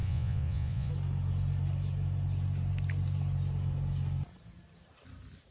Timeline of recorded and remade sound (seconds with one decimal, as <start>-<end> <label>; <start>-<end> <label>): 0.0-0.9 remade; 0.9-5.5 recorded